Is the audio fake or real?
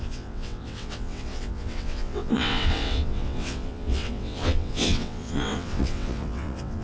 fake